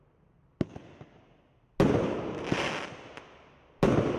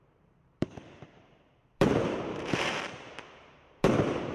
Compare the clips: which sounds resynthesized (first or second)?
second